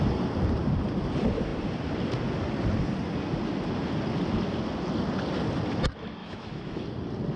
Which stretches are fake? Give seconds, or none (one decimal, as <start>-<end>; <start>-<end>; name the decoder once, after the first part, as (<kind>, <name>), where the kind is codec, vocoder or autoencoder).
6.2-6.8 (autoencoder, DAC-VAE)